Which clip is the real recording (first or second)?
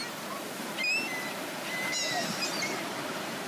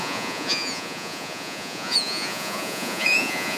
first